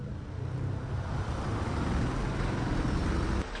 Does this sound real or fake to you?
real